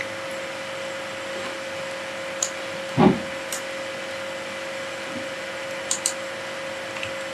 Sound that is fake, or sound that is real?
real